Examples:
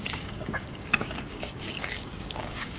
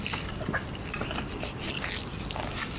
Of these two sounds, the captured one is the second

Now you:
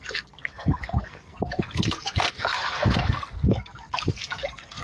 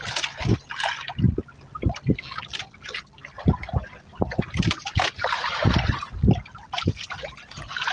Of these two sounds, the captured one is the second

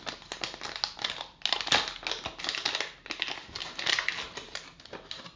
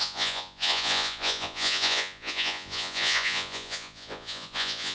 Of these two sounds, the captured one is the first